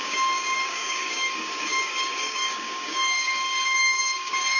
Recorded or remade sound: remade